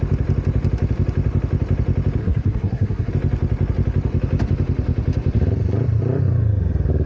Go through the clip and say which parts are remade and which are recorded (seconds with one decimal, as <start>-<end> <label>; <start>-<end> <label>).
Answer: 0.0-2.2 recorded; 2.2-3.1 remade; 3.1-7.1 recorded